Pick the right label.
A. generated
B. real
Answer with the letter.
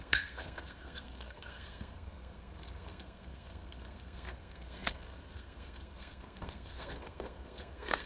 A